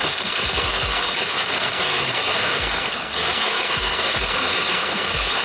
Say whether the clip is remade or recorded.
remade